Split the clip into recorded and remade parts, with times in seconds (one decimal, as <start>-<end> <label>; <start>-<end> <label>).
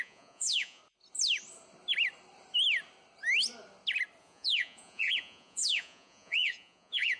0.0-0.8 remade; 0.8-4.2 recorded; 4.2-7.2 remade